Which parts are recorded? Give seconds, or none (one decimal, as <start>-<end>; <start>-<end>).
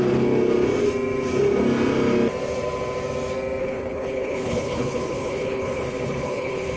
0.0-3.6